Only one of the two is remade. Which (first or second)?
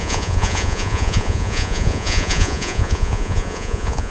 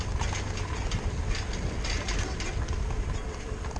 first